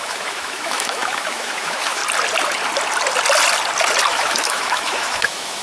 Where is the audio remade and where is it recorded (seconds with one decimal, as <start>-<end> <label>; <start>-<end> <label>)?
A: 0.0-2.0 remade; 2.0-4.1 recorded; 4.1-5.6 remade